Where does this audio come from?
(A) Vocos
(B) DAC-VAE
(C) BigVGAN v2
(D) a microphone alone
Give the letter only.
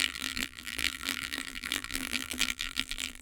C